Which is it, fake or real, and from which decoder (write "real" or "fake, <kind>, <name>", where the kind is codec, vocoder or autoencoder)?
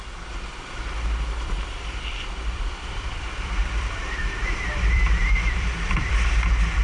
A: fake, vocoder, BigVGAN v2